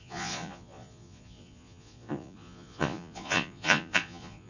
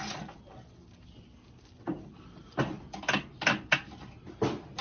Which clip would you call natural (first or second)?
second